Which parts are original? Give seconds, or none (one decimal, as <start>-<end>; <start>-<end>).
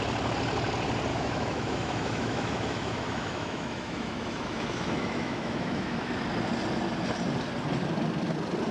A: 0.0-1.1; 6.1-8.7